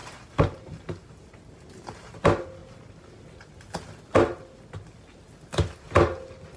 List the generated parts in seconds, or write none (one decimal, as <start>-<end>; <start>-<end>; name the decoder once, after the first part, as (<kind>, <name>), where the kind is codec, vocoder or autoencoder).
0.0-2.2 (vocoder, BigVGAN v2)